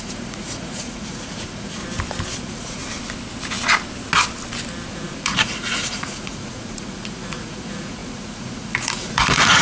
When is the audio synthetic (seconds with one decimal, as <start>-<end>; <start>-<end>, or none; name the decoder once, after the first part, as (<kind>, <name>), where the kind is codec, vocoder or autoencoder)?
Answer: 0.0-1.8 (vocoder, Vocos); 2.4-2.8; 4.9-9.6